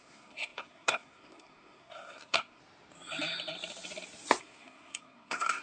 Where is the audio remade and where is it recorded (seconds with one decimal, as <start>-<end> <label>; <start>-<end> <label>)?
0.0-2.6 remade; 2.6-4.4 recorded; 4.4-5.6 remade